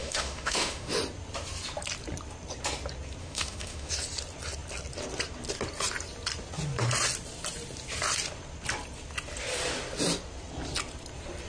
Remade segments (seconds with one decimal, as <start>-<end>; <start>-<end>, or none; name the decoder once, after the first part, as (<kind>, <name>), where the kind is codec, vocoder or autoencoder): 0.0-1.0 (autoencoder, DAC-VAE); 3.2-3.9